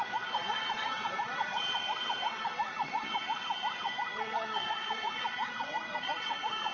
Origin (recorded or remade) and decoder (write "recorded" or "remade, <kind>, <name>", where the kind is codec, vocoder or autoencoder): remade, vocoder, WaveNeXt